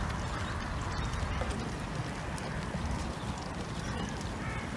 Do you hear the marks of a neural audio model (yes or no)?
no